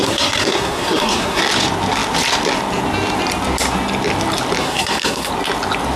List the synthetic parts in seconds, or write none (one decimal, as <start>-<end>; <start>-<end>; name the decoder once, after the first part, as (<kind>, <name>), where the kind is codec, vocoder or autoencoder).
0.0-1.4 (codec, SNAC); 4.6-5.3